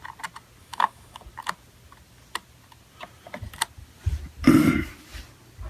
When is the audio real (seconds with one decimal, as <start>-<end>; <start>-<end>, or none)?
0.0-0.6; 1.2-5.7

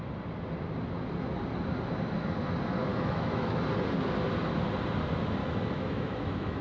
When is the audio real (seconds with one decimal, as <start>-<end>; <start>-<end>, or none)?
0.0-2.9; 3.6-5.4